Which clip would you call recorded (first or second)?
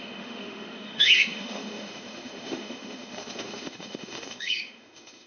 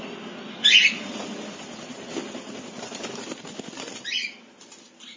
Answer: second